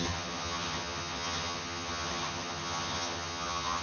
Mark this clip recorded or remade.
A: remade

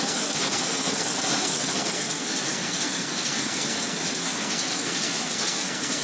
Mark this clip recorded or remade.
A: remade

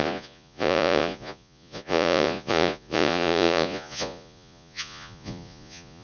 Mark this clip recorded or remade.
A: remade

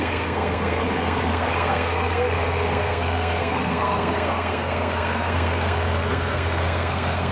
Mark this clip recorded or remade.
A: remade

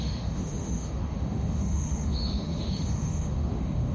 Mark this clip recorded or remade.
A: remade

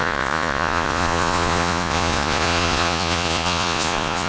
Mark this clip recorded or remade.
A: remade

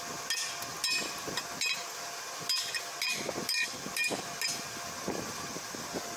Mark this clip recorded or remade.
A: recorded